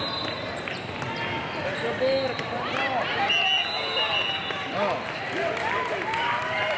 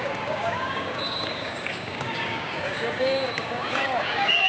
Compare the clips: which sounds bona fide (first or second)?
first